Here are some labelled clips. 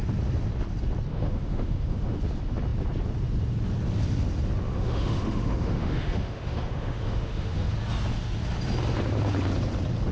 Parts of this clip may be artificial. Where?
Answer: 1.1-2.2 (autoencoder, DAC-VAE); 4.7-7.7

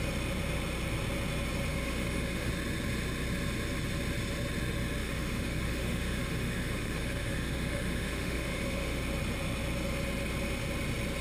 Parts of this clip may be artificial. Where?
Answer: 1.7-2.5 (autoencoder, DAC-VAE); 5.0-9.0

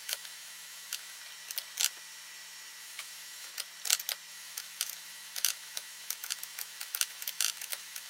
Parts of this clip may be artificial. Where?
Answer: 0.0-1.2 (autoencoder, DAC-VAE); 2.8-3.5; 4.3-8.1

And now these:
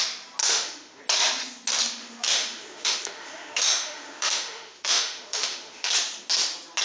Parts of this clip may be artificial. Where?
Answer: 0.4-1.0 (autoencoder, DAC-VAE); 1.8-5.9

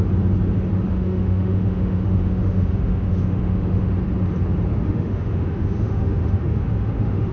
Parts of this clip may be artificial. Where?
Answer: 0.9-3.9 (autoencoder, DAC-VAE); 4.7-7.3

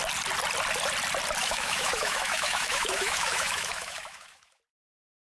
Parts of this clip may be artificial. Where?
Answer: 1.4-4.6 (autoencoder, DAC-VAE)

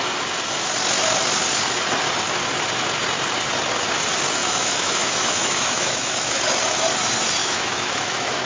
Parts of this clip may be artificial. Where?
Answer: 4.4-6.4 (autoencoder, DAC-VAE); 7.4-8.4